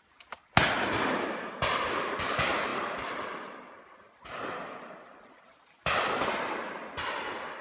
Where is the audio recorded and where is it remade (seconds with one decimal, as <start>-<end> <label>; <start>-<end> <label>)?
0.0-7.6 recorded